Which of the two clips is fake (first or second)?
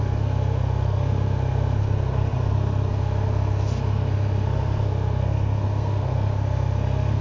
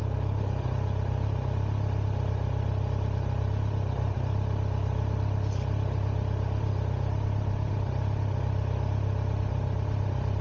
first